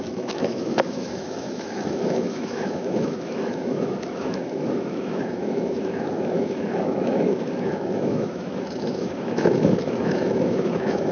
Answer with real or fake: fake